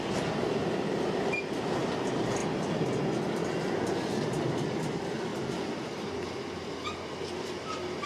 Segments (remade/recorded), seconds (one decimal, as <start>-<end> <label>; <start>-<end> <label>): 0.0-8.1 recorded